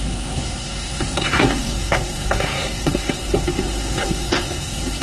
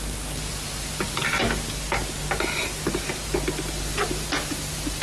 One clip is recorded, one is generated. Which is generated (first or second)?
first